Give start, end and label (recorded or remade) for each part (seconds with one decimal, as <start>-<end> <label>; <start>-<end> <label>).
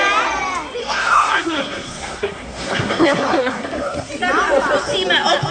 0.0-0.8 recorded; 0.8-4.1 remade; 4.1-5.5 recorded